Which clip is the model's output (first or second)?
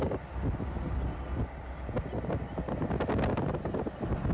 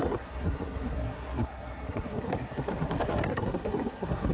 second